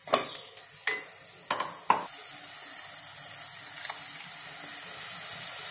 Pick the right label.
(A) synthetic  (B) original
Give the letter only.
B